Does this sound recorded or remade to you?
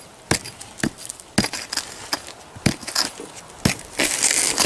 recorded